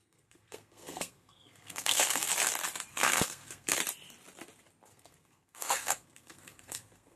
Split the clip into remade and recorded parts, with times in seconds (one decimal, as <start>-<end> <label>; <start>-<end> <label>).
0.0-2.3 remade; 2.3-2.9 recorded; 2.9-3.8 remade; 3.8-4.9 recorded; 4.9-7.2 remade